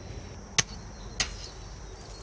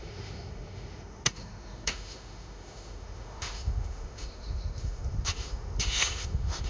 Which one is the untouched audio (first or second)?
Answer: first